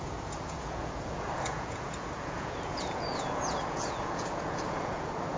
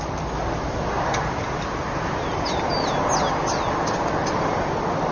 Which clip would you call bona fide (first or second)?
second